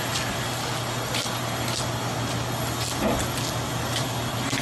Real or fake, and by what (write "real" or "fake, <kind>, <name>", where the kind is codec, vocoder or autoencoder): real